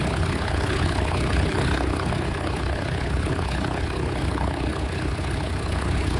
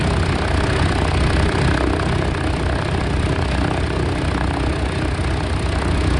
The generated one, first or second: first